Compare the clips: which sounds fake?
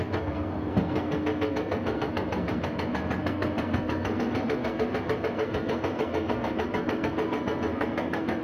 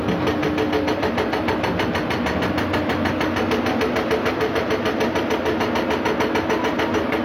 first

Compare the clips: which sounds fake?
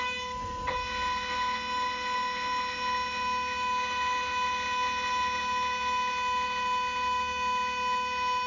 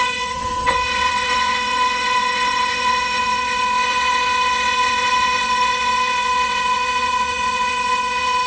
second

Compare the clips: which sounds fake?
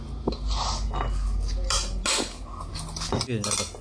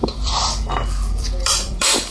second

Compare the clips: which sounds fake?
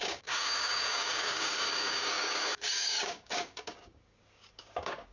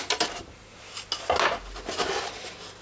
first